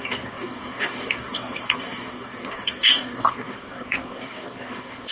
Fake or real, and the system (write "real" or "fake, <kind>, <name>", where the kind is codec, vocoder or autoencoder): fake, codec, DAC